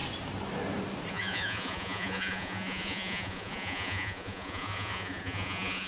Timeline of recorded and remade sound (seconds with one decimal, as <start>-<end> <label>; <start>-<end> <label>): 0.0-1.1 recorded; 1.1-5.9 remade

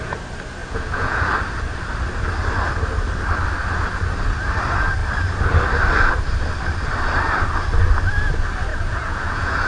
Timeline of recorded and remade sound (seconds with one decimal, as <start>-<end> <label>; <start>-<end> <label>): 0.0-0.6 recorded; 0.6-1.2 remade; 1.2-8.7 recorded; 8.7-9.7 remade